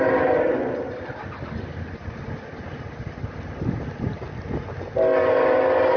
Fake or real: real